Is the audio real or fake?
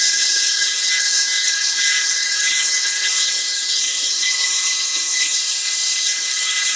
fake